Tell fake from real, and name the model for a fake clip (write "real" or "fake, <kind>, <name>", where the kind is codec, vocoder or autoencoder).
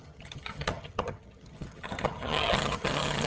fake, vocoder, HiFi-GAN